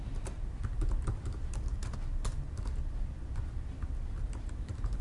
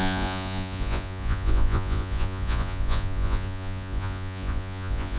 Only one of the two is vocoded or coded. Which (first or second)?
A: second